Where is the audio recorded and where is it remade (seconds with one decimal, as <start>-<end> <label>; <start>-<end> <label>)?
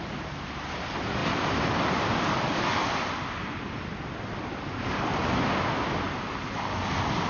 0.0-7.3 recorded